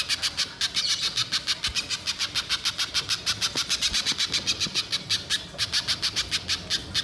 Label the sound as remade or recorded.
recorded